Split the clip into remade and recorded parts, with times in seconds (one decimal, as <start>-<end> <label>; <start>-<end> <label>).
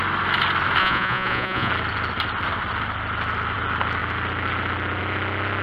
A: 0.0-0.8 recorded; 0.8-1.7 remade; 1.7-5.6 recorded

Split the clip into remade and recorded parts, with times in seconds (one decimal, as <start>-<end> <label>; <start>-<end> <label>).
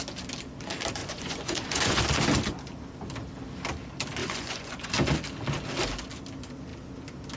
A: 0.0-1.0 recorded; 1.0-2.0 remade; 2.0-4.2 recorded; 4.2-4.9 remade; 4.9-7.4 recorded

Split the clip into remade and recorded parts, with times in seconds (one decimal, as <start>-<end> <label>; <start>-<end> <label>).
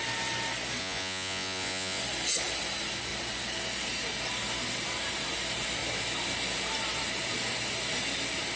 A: 0.0-0.8 recorded; 0.8-2.0 remade; 2.0-8.6 recorded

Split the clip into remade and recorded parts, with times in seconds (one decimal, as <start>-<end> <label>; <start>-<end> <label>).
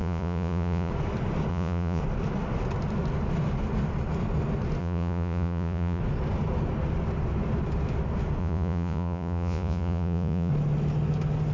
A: 0.0-0.9 remade; 0.9-1.5 recorded; 1.5-2.0 remade; 2.0-4.8 recorded; 4.8-6.0 remade; 6.0-8.4 recorded; 8.4-10.5 remade; 10.5-11.5 recorded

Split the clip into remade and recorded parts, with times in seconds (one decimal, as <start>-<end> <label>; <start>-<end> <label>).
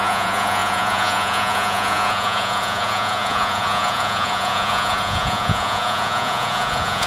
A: 0.0-7.1 remade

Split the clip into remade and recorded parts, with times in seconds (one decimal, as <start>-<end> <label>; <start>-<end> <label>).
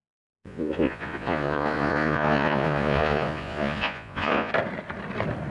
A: 0.0-4.5 remade; 4.5-5.5 recorded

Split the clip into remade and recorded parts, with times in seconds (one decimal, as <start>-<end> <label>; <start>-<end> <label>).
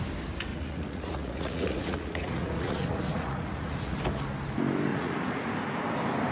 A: 0.0-0.5 recorded; 0.5-4.0 remade; 4.0-4.9 recorded; 4.9-5.5 remade; 5.5-6.3 recorded